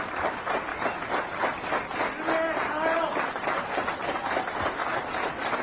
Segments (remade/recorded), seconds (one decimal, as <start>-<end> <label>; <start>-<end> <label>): 0.0-0.7 remade; 0.7-4.1 recorded; 4.1-4.8 remade; 4.8-5.6 recorded